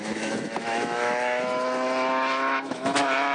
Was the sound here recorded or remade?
remade